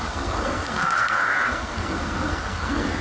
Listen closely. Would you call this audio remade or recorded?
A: remade